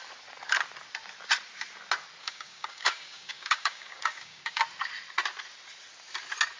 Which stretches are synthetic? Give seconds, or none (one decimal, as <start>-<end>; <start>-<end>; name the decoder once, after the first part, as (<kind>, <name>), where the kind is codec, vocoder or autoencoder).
2.2-4.6 (codec, DAC)